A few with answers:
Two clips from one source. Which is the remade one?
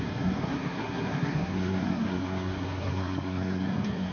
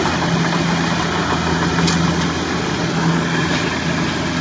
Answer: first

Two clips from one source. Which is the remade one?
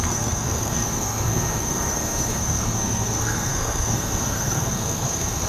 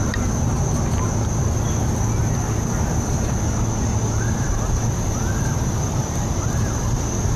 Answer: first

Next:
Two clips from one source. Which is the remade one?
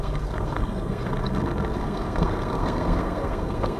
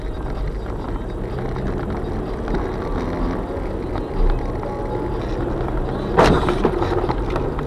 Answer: first